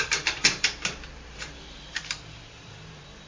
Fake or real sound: fake